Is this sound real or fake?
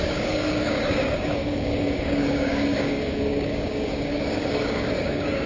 fake